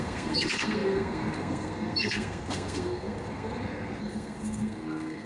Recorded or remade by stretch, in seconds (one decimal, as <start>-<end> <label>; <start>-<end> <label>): 0.0-5.3 remade